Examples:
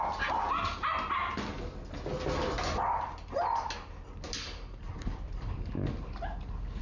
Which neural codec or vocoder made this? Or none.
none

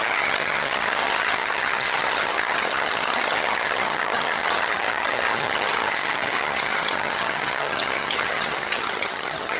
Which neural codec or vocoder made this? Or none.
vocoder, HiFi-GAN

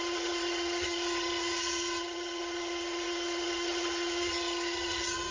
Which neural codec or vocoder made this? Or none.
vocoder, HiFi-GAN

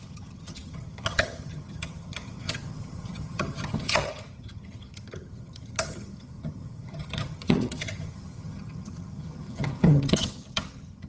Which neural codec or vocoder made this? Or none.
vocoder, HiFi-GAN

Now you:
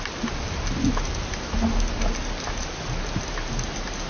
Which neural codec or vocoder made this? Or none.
none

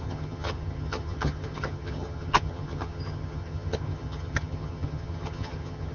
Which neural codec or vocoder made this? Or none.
vocoder, HiFi-GAN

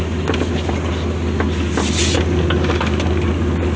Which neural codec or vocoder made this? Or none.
none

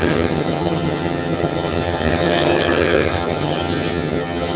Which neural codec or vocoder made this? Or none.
vocoder, HiFi-GAN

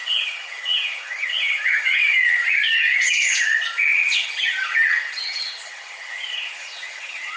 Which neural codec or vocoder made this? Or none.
vocoder, HiFi-GAN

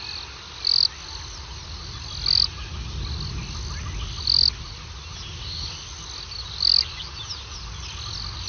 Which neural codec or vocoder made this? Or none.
none